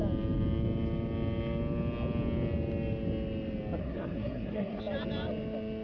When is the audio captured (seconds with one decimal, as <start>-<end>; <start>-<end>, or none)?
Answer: 0.0-3.8; 4.8-5.8